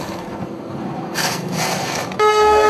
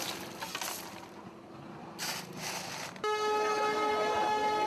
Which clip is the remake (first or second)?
first